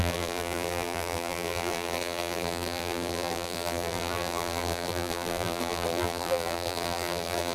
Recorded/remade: remade